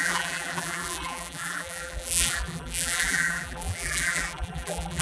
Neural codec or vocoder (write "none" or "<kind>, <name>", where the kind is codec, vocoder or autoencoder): vocoder, BigVGAN v2